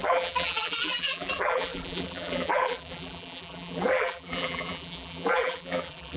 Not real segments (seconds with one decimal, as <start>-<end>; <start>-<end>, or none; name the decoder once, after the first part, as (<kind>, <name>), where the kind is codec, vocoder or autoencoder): 0.0-6.2 (vocoder, BigVGAN v2)